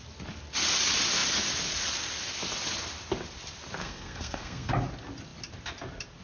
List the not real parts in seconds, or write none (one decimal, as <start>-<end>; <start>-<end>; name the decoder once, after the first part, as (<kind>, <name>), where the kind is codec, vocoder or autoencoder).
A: 3.8-4.7 (codec, SNAC)